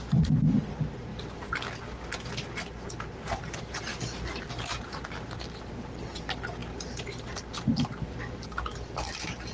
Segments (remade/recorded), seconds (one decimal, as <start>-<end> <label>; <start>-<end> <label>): 0.0-9.5 recorded